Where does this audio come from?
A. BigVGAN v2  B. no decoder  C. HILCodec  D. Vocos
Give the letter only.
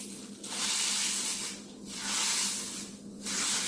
B